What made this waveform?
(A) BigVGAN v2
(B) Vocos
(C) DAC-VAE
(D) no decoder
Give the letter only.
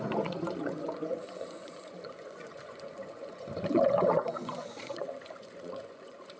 B